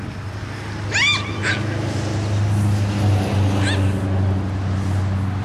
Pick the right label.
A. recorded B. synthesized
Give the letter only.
A